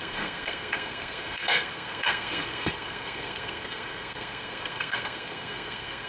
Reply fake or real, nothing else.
fake